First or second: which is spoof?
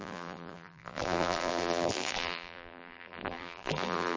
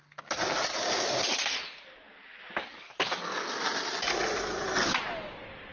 first